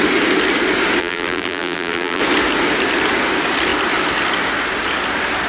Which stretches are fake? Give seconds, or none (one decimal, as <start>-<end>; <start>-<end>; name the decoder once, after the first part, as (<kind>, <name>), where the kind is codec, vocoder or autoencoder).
1.0-2.2 (vocoder, BigVGAN v2)

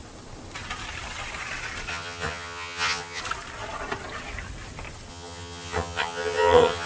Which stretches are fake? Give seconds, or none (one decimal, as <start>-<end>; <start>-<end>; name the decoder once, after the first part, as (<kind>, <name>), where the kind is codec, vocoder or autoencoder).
1.9-3.2 (vocoder, HiFi-GAN); 5.1-6.9

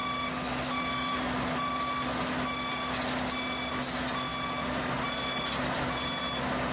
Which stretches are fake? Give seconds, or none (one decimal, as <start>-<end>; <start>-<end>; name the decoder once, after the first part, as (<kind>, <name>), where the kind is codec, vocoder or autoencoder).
none

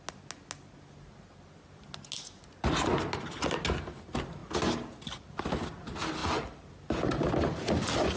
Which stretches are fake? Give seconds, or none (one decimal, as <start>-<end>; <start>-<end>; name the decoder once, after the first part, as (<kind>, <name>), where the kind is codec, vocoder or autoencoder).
none

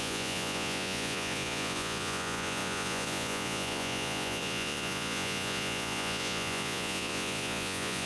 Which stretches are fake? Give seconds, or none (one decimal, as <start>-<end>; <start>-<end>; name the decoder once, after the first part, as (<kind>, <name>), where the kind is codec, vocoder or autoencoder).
0.0-8.1 (vocoder, Vocos)

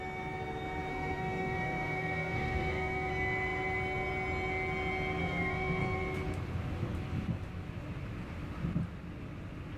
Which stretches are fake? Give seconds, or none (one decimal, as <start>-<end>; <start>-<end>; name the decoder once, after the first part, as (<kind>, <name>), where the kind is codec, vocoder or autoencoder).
0.9-3.1 (codec, SNAC); 5.2-5.8

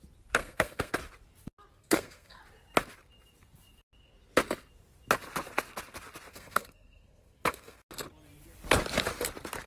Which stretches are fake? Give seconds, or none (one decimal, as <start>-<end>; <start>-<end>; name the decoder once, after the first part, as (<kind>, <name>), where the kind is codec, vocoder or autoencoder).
0.4-0.9 (codec, SNAC); 1.8-2.4; 6.3-7.8